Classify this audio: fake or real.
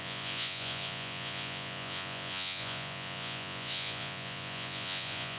fake